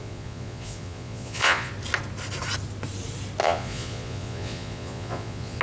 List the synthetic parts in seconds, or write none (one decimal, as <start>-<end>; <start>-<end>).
0.0-1.7; 3.4-5.6